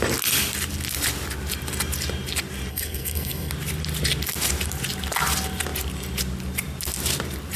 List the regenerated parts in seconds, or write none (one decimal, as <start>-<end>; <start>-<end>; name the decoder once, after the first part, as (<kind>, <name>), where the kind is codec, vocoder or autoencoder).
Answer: 2.7-3.5 (codec, SNAC)